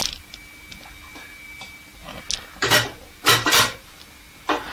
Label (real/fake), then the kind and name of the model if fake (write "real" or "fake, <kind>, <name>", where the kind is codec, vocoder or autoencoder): real